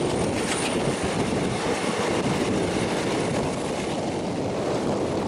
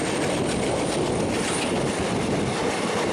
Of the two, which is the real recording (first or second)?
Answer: second